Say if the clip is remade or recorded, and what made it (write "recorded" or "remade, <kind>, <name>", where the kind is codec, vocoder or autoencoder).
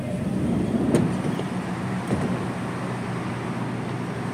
recorded